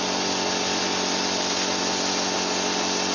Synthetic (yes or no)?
no